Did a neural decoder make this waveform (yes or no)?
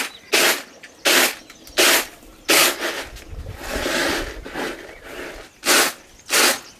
no